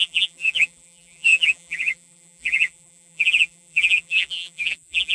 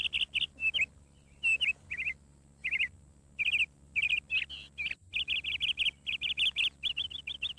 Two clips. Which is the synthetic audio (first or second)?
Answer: first